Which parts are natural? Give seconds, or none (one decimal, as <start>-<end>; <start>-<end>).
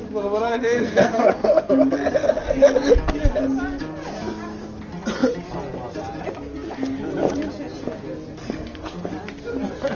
0.0-0.5; 1.7-8.4; 9.1-9.9